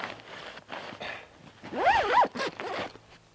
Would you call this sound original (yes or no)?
yes